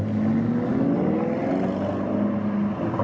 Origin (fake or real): real